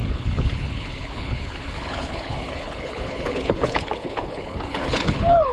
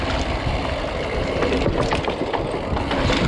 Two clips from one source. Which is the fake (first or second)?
first